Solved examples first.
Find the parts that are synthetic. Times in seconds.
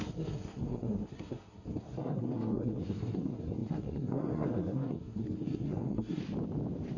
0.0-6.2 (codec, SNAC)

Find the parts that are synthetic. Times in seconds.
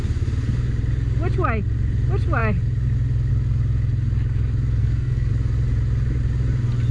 4.8-5.3 (codec, SNAC)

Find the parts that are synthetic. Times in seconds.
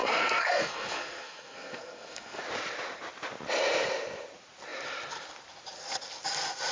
0.0-2.4 (codec, SNAC)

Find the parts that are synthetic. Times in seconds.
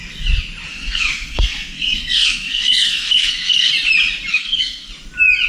0.7-3.7 (codec, SNAC); 4.3-4.9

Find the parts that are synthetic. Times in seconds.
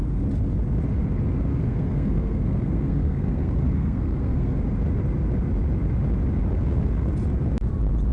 1.5-4.6 (codec, SNAC); 6.5-7.1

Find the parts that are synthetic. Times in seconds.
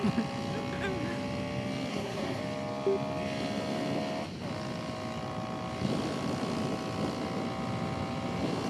1.9-2.4 (codec, SNAC)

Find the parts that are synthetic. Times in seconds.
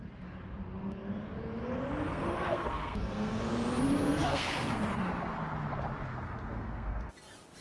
2.1-3.4 (codec, SNAC); 4.0-4.8; 6.1-7.1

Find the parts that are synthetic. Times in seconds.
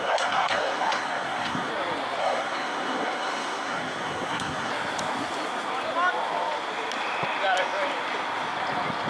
0.0-1.7 (codec, SNAC); 2.2-4.7